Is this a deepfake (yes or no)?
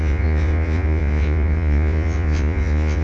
yes